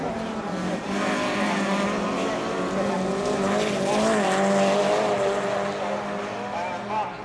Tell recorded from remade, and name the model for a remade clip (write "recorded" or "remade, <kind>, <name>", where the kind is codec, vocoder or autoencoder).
recorded